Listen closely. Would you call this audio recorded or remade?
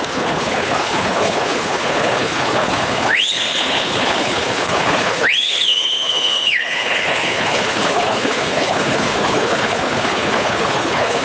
remade